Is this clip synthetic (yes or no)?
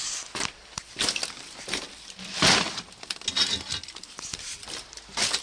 no